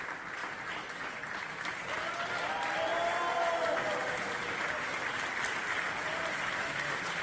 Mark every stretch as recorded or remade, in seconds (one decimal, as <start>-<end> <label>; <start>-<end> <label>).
0.0-7.2 recorded